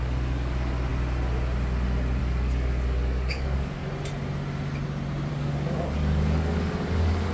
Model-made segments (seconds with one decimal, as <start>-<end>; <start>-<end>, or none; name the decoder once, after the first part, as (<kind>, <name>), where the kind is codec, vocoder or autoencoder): 0.0-0.9 (codec, DAC); 2.2-3.8; 5.3-7.3